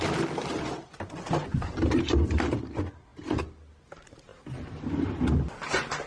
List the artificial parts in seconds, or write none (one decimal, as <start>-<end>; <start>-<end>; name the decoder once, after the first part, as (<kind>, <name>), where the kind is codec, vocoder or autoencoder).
none